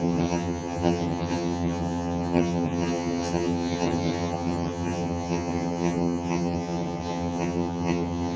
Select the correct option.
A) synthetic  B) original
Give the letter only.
A